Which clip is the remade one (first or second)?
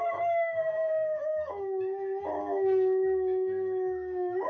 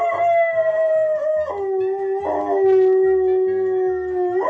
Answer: first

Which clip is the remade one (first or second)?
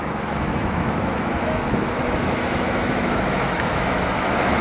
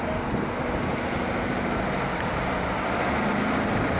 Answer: first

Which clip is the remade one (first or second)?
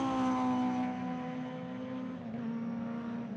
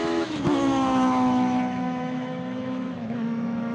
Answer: second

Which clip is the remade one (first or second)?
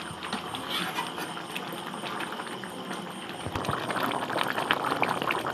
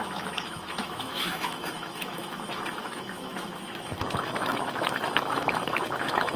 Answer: second